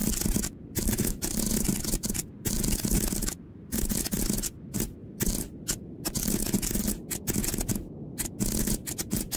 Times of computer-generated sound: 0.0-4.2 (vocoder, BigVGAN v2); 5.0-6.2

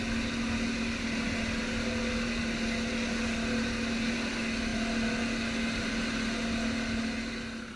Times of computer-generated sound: none

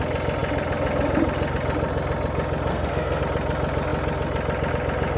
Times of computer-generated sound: 2.7-3.2 (codec, SNAC)

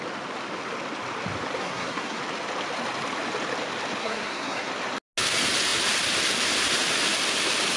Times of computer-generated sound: 1.6-2.2 (codec, SNAC); 4.0-4.7

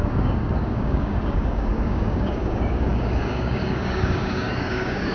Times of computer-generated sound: 0.0-5.1 (codec, DAC)

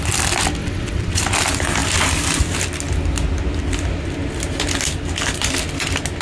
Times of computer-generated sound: 0.6-1.2 (vocoder, WaveNeXt)

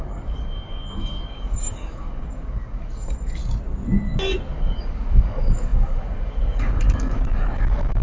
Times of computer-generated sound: 0.0-3.4 (codec, DAC); 4.5-8.0

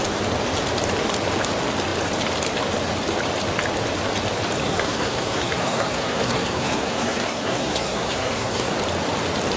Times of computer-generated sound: 4.6-8.7 (codec, SNAC)